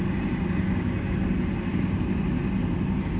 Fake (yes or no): no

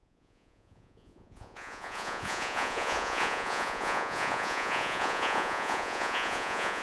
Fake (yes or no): yes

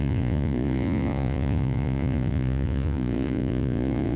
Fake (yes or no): yes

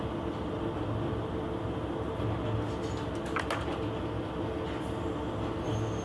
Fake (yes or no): no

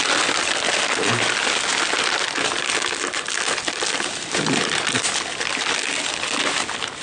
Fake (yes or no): no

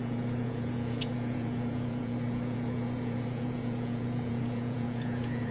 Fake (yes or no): yes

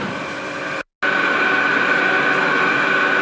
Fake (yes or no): no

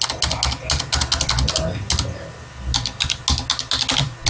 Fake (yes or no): no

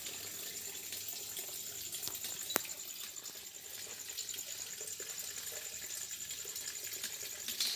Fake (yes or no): no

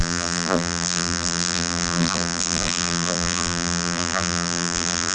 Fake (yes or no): yes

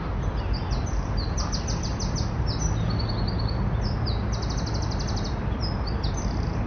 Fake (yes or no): no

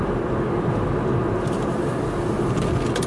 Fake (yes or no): no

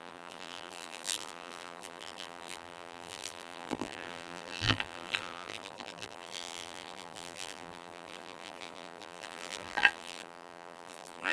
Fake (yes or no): yes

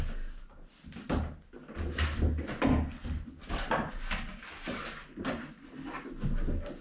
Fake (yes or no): no